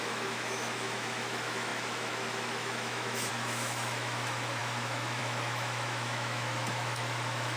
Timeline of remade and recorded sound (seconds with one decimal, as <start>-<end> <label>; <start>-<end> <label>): 0.0-7.6 remade